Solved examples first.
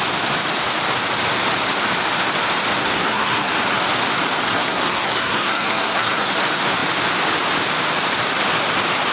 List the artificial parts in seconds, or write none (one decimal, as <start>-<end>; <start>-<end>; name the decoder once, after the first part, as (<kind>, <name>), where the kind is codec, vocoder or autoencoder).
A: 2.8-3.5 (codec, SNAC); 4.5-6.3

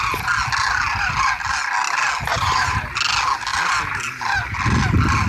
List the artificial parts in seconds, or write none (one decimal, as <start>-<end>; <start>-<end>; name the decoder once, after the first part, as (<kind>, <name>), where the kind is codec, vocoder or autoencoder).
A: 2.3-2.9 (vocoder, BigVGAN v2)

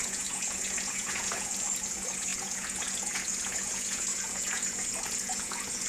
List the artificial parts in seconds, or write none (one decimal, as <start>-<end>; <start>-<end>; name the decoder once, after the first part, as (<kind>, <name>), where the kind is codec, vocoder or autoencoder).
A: 0.0-5.9 (vocoder, Vocos)

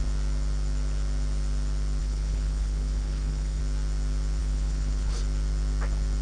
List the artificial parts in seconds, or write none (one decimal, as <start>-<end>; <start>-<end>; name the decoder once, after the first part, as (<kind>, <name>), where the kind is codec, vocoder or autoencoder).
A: 2.0-3.6 (codec, HILCodec); 4.4-5.2

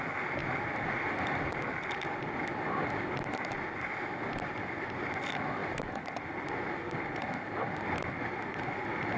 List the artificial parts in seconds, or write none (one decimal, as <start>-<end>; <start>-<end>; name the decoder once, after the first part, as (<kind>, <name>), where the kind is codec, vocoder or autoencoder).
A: none

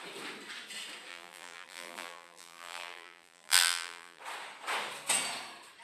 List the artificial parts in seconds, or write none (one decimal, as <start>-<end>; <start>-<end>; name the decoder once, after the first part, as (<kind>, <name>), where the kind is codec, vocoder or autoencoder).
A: 1.1-4.2 (vocoder, BigVGAN v2)

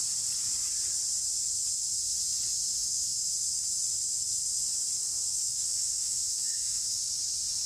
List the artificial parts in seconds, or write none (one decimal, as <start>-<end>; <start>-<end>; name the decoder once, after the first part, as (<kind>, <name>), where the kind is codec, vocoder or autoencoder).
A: 5.1-7.0 (autoencoder, DAC-VAE)

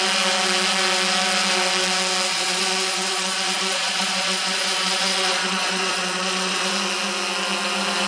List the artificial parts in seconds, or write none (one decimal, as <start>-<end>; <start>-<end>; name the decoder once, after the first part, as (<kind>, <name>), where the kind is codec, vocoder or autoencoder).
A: 2.3-6.7 (vocoder, Vocos)